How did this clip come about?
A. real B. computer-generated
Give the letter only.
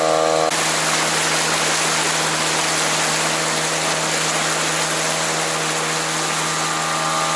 A